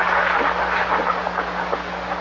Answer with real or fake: real